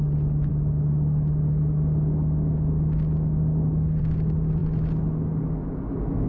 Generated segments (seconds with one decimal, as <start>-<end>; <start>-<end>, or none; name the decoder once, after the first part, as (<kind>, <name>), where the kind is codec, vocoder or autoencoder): none